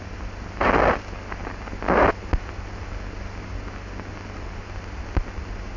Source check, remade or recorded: recorded